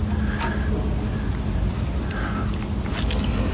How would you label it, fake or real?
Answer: real